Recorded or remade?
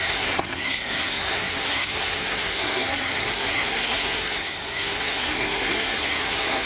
remade